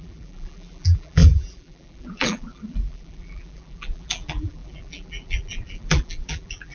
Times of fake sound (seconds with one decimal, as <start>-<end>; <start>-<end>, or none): 0.0-6.7